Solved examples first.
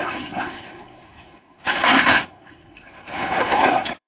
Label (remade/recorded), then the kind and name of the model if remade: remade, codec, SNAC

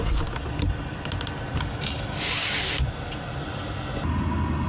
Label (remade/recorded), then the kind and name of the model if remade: recorded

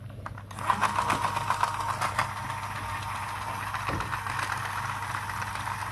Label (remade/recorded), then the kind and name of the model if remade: recorded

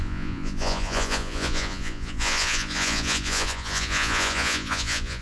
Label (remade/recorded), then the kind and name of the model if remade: remade, vocoder, Vocos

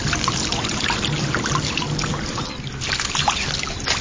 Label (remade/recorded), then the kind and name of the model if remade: recorded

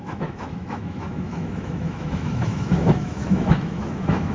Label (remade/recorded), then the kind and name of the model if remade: remade, autoencoder, DAC-VAE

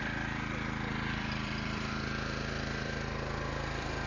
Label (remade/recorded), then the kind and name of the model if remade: remade, vocoder, BigVGAN v2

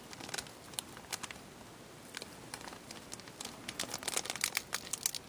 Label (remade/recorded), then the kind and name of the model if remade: recorded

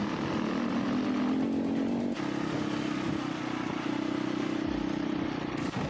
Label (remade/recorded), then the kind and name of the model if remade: recorded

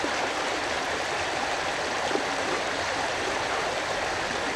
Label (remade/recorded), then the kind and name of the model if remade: remade, vocoder, BigVGAN v2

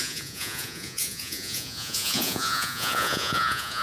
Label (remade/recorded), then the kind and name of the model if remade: remade, vocoder, Vocos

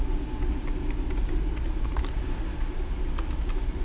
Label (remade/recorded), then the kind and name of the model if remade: recorded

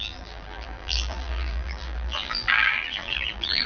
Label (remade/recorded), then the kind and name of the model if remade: remade, vocoder, BigVGAN v2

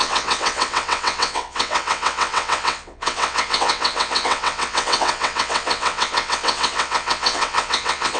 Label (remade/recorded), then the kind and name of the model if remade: remade, vocoder, WaveNeXt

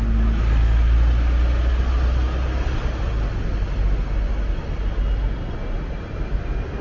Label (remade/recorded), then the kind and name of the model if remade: recorded